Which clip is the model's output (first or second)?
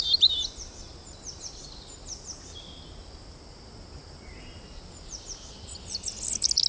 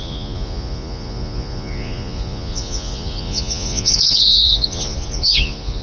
second